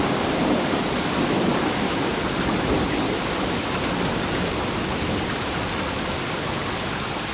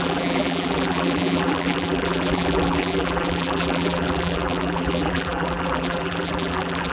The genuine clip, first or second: first